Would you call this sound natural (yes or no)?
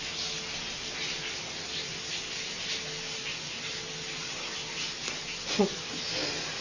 yes